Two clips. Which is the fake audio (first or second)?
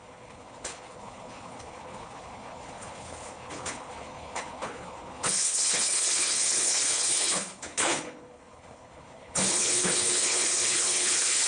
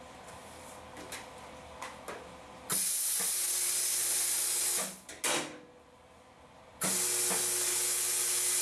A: first